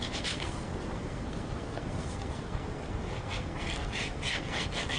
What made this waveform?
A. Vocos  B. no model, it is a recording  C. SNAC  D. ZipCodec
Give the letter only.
C